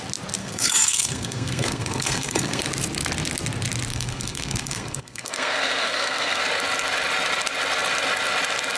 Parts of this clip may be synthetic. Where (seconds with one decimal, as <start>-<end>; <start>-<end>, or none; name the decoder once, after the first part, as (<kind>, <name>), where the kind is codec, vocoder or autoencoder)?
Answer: 0.4-2.6 (codec, SNAC); 3.9-6.4